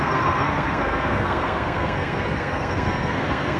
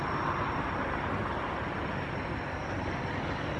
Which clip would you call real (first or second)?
second